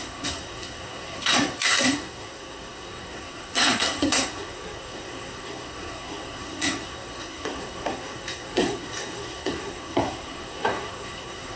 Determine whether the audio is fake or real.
fake